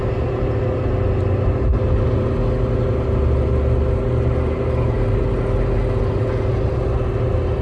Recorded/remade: recorded